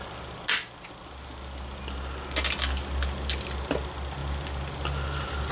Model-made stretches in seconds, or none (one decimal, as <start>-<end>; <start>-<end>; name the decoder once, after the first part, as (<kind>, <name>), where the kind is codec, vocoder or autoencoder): none